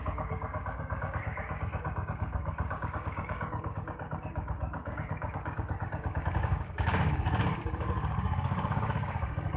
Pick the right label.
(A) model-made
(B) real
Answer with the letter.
A